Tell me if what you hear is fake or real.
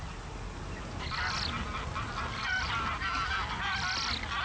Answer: real